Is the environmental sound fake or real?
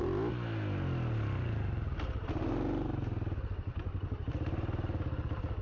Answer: real